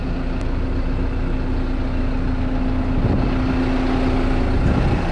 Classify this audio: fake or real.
real